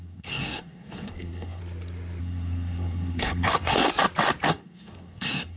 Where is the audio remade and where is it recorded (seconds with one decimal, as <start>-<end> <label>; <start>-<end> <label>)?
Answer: 0.0-1.6 remade; 1.6-2.2 recorded; 2.2-3.9 remade; 3.9-4.5 recorded; 4.5-5.6 remade